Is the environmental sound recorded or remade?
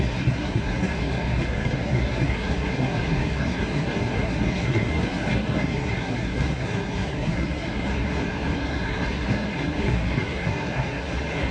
remade